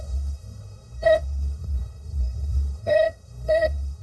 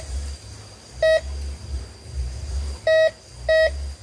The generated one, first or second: first